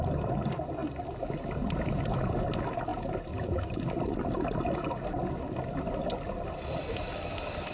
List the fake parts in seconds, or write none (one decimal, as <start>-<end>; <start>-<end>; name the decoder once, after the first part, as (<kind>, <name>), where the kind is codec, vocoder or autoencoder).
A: none